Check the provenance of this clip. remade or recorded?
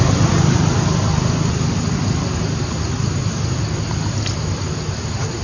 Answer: recorded